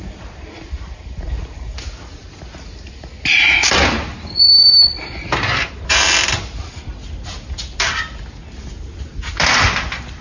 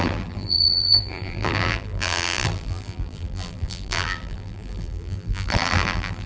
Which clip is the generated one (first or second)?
second